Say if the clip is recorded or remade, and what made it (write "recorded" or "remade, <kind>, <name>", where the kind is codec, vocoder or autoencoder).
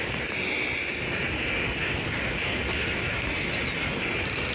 recorded